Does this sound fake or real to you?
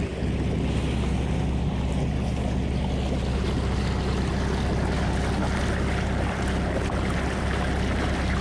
real